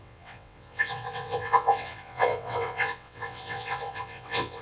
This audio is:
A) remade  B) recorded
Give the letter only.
A